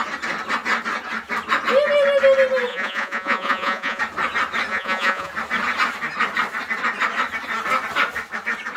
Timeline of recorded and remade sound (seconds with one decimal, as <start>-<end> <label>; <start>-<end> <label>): 0.0-2.7 recorded; 2.7-4.0 remade; 4.0-4.7 recorded; 4.7-5.3 remade; 5.3-8.8 recorded

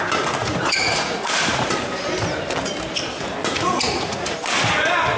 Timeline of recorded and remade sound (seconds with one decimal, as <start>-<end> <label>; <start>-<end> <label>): 0.0-0.4 recorded; 0.4-1.7 remade; 1.7-3.4 recorded; 3.4-4.2 remade; 4.2-5.2 recorded

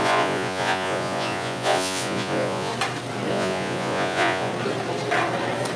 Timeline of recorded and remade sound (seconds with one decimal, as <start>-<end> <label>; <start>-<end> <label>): 0.0-2.7 remade; 2.7-3.3 recorded; 3.3-4.5 remade; 4.5-5.8 recorded

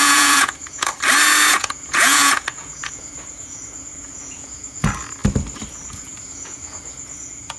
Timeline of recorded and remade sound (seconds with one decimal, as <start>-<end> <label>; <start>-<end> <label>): 0.0-0.9 remade; 0.9-1.5 recorded; 1.5-5.2 remade; 5.2-5.8 recorded; 5.8-7.6 remade

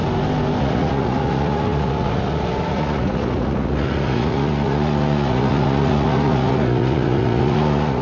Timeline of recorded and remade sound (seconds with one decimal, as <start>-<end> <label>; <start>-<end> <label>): 0.0-0.6 recorded; 0.6-8.0 remade

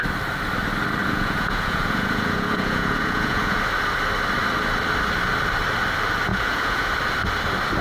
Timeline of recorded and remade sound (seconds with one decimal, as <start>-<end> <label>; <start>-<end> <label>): 0.0-1.0 recorded; 1.0-3.6 remade; 3.6-6.3 recorded; 6.3-6.9 remade; 6.9-7.8 recorded

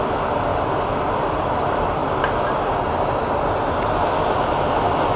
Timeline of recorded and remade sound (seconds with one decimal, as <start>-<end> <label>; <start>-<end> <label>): 0.0-5.2 recorded

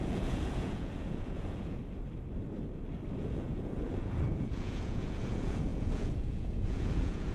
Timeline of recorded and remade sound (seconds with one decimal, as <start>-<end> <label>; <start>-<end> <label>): 0.0-1.8 remade; 1.8-3.2 recorded; 3.2-7.3 remade